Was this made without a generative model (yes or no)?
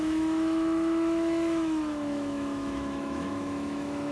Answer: no